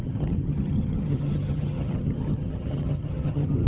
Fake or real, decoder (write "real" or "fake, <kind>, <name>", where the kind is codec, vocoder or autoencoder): fake, vocoder, HiFi-GAN